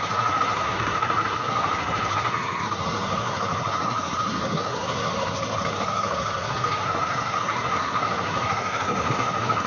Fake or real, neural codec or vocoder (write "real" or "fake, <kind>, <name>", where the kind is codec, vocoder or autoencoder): fake, codec, SNAC